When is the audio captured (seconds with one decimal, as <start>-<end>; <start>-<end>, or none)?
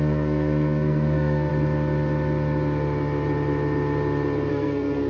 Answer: 1.5-4.5